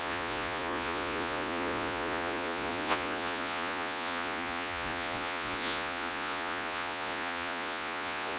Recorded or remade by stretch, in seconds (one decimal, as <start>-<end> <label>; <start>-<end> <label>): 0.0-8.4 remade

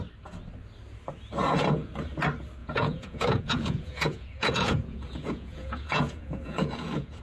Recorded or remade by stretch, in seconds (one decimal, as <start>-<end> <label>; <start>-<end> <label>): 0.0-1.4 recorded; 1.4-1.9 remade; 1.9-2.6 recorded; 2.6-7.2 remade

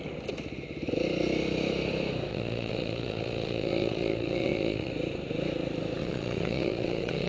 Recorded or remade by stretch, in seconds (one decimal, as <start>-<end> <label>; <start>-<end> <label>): 0.0-2.3 recorded; 2.3-4.9 remade; 4.9-6.0 recorded; 6.0-7.3 remade